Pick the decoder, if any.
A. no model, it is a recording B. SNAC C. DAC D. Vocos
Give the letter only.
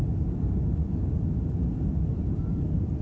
A